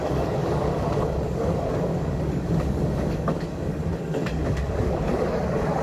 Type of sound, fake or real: fake